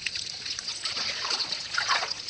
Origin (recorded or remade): remade